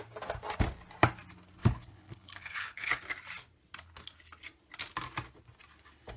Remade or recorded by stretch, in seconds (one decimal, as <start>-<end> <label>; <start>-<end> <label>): 0.0-1.6 recorded; 1.6-3.0 remade; 3.0-6.2 recorded